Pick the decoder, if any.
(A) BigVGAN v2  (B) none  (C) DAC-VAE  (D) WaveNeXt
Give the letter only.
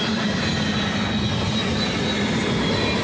B